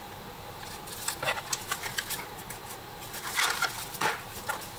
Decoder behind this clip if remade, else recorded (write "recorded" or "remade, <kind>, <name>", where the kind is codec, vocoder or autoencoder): recorded